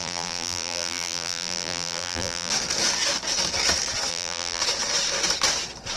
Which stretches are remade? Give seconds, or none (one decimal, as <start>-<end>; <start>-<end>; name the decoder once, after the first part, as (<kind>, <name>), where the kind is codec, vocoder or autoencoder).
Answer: 0.0-2.5 (vocoder, BigVGAN v2); 4.1-4.6